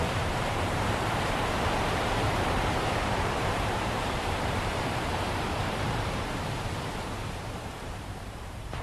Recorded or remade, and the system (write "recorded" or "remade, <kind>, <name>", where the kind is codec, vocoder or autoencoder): remade, vocoder, BigVGAN v2